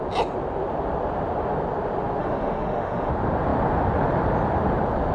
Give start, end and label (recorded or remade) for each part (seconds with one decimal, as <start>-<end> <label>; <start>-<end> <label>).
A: 0.0-2.2 recorded; 2.2-3.1 remade; 3.1-5.1 recorded